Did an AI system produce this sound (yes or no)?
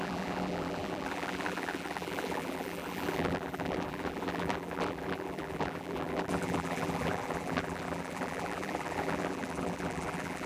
yes